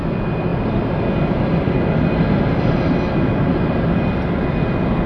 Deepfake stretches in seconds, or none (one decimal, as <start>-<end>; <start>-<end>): none